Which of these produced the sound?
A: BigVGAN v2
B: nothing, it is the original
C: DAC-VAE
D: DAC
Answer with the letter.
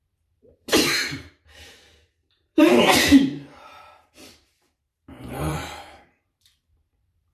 A